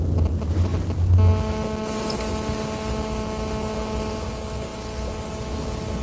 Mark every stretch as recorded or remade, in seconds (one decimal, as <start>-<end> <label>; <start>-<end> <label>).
0.0-6.0 recorded